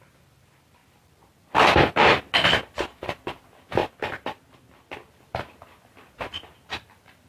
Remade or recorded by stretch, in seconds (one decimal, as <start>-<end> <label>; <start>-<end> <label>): 0.0-0.8 remade; 0.8-3.0 recorded; 3.0-3.8 remade; 3.8-5.1 recorded; 5.1-7.3 remade